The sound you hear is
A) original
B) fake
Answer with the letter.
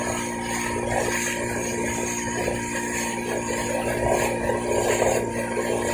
A